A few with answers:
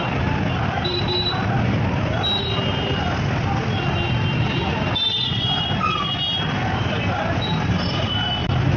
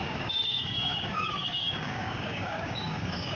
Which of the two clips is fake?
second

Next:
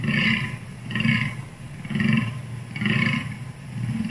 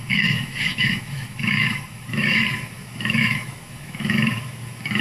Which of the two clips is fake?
second